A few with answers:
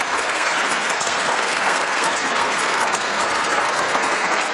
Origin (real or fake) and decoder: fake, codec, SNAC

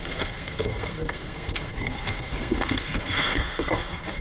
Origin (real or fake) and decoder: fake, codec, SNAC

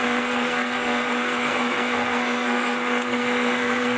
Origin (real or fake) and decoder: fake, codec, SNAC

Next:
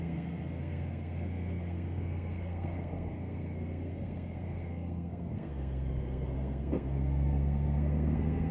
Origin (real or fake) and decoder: fake, codec, SNAC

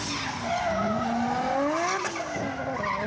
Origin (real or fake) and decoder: real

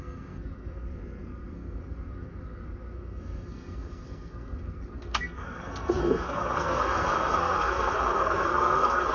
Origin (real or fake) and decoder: fake, codec, SNAC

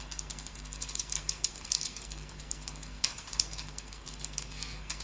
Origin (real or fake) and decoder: fake, codec, SNAC